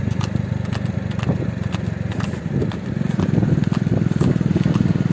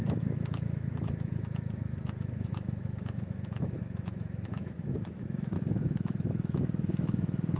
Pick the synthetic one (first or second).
second